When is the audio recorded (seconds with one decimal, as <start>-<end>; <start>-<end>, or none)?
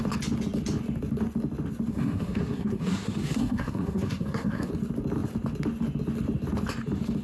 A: 0.0-1.9; 4.7-7.2